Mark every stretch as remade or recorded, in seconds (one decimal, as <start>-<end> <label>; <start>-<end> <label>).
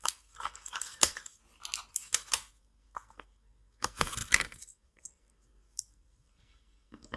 0.0-1.4 remade; 1.4-1.9 recorded; 1.9-7.2 remade